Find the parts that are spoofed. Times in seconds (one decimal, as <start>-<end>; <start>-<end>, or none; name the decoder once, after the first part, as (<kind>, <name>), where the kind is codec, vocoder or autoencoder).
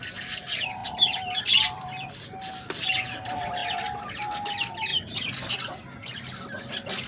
none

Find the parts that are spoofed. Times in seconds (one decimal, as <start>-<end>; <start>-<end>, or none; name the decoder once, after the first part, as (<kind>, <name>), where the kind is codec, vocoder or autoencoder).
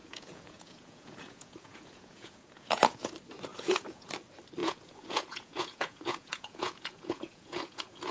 0.0-3.1 (vocoder, Vocos); 3.5-4.1; 4.6-8.1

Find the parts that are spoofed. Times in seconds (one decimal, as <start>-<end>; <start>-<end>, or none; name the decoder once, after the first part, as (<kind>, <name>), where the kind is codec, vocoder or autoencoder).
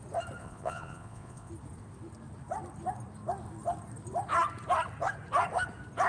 0.4-1.5 (vocoder, Vocos)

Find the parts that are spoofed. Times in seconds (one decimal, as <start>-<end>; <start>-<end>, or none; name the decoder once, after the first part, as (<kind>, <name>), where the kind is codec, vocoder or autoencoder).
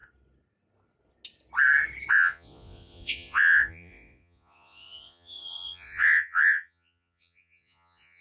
2.1-8.2 (vocoder, Vocos)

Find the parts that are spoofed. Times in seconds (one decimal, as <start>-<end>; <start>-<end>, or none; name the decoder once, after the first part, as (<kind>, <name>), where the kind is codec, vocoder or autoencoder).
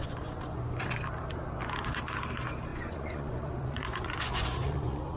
0.0-0.9 (vocoder, Vocos); 2.7-5.2